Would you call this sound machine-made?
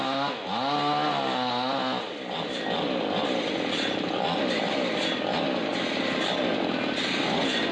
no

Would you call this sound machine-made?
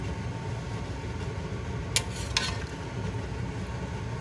no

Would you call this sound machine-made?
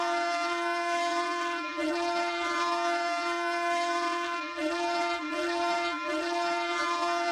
yes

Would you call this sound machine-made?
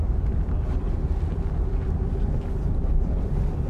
no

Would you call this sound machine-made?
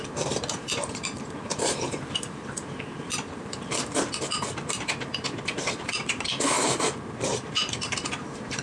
yes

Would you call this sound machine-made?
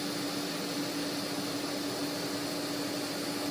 no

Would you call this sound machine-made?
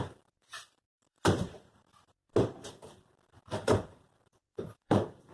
yes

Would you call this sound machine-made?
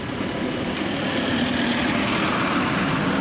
yes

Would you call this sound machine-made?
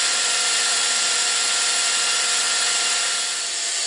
no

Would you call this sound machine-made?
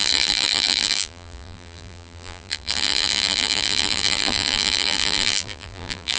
yes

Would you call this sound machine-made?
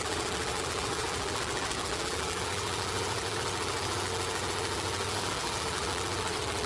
yes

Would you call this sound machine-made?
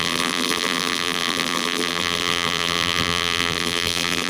yes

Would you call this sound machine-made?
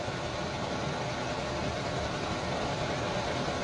no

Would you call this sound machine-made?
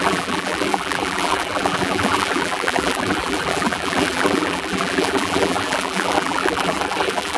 yes